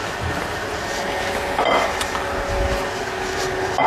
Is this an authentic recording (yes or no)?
yes